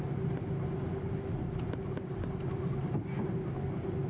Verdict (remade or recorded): recorded